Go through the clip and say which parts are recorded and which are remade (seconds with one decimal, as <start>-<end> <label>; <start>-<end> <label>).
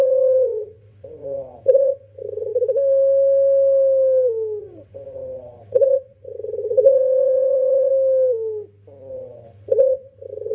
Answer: 0.0-2.5 remade; 2.5-4.6 recorded; 4.6-7.9 remade; 7.9-9.1 recorded; 9.1-10.5 remade